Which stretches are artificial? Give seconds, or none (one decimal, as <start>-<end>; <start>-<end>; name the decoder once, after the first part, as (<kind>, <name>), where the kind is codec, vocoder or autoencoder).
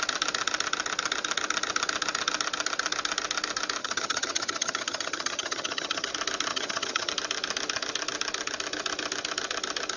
3.8-6.1 (vocoder, HiFi-GAN); 6.5-7.1